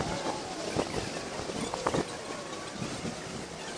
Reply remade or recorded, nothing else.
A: recorded